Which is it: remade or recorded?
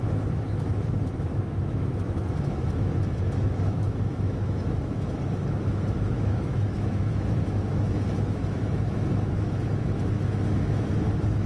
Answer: remade